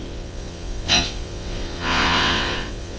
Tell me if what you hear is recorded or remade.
remade